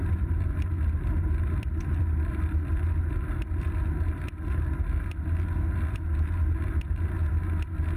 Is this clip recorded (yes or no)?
yes